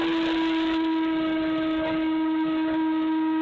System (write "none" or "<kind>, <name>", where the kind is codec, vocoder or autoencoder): none